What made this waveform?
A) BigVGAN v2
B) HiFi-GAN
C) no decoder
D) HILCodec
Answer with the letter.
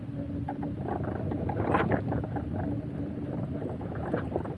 C